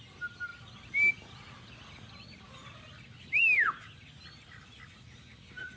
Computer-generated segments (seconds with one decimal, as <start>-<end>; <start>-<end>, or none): none